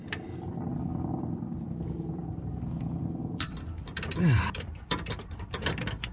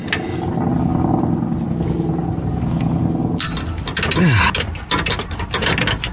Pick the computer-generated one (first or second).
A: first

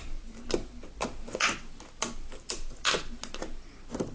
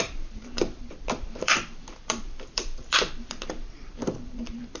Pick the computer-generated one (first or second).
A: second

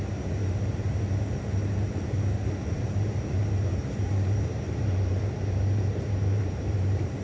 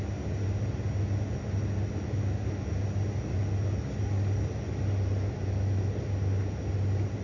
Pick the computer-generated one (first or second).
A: first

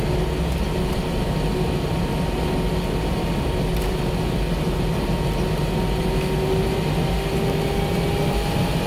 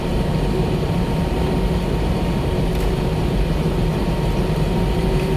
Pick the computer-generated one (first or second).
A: second